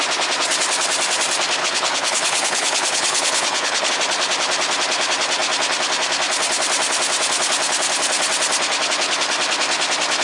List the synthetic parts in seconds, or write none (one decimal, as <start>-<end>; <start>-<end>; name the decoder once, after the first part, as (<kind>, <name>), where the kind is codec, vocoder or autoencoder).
1.6-3.9 (codec, HILCodec)